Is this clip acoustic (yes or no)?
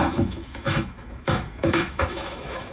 no